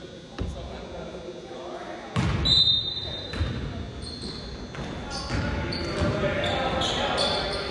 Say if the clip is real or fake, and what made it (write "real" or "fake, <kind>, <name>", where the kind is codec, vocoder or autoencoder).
real